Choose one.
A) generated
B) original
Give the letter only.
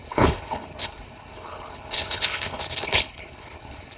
A